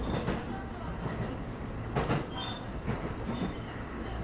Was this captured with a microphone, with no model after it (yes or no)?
yes